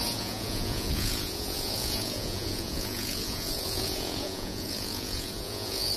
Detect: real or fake fake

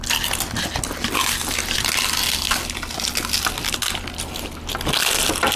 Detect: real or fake real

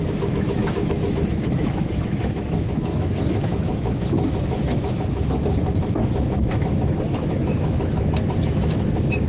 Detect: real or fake fake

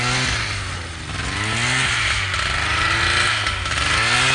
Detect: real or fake real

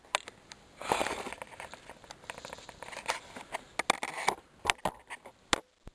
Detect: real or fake real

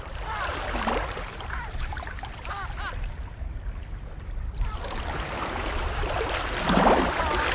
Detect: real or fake real